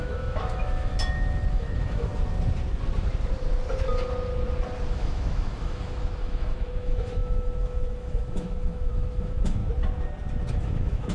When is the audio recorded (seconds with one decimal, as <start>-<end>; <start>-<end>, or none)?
0.9-1.5; 2.1-4.9; 9.6-10.5